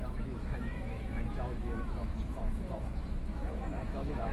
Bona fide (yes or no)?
no